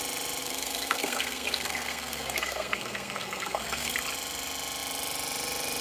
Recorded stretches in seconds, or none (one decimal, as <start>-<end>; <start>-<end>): 0.0-0.4; 3.9-5.8